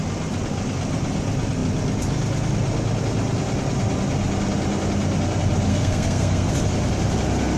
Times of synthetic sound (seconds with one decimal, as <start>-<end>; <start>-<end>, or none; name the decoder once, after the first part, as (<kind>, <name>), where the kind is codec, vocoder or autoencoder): 5.7-6.5 (codec, SNAC)

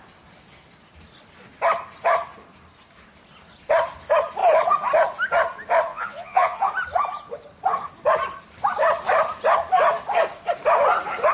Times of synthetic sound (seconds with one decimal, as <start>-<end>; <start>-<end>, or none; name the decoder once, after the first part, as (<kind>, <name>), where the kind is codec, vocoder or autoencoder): 5.9-6.6 (vocoder, Vocos)